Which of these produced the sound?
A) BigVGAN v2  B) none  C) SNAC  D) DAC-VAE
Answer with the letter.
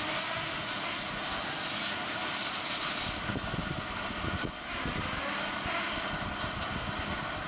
B